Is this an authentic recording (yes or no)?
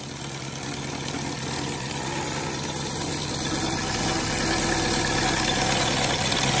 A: yes